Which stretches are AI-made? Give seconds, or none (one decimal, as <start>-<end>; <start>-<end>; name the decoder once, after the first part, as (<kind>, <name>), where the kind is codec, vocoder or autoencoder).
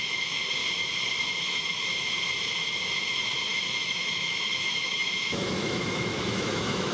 0.0-0.6 (autoencoder, DAC-VAE); 1.3-1.9; 3.0-6.9